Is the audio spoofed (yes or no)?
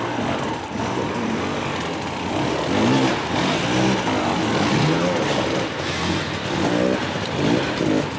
no